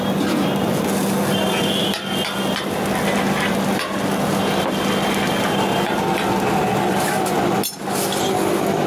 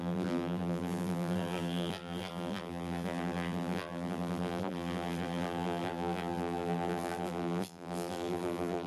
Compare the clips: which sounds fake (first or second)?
second